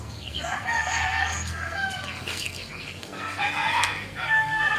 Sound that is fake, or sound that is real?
fake